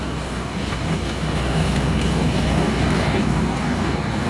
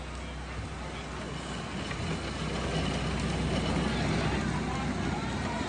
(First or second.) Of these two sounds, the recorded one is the second